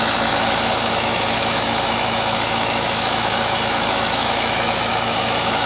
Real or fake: fake